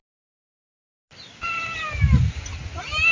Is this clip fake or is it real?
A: real